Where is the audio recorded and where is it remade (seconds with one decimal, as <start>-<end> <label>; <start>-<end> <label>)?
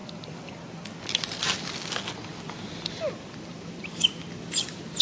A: 0.0-5.0 recorded